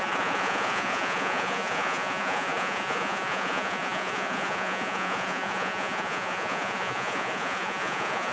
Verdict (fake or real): fake